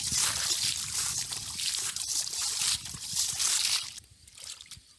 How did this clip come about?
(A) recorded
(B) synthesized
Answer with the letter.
A